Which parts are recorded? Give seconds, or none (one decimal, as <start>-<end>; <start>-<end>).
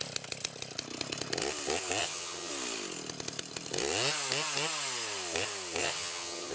0.0-2.0; 2.5-5.8